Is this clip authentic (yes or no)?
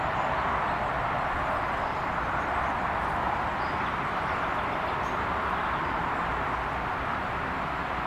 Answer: yes